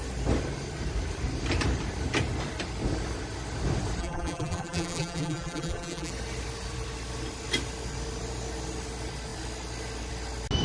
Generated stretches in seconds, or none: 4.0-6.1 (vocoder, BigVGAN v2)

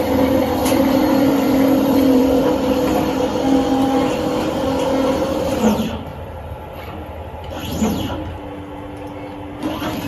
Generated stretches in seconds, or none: 0.6-2.4 (vocoder, BigVGAN v2); 6.1-6.6

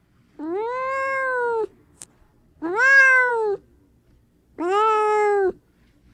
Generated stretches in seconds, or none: none

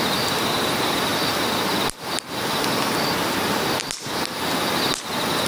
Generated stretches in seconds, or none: none

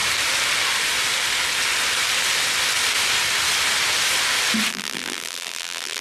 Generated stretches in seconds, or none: 4.7-6.0 (vocoder, BigVGAN v2)

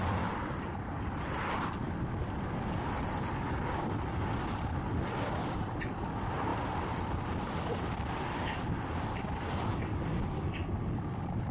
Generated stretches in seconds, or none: 6.5-7.6 (vocoder, BigVGAN v2)